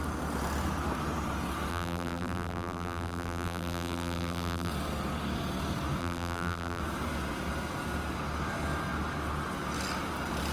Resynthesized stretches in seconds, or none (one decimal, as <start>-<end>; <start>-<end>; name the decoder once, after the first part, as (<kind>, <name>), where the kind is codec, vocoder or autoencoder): 1.7-4.7 (vocoder, BigVGAN v2); 6.0-6.8